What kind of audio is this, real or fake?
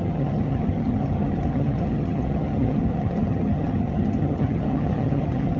fake